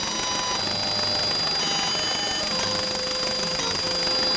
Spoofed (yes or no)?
no